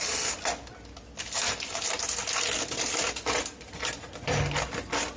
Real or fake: real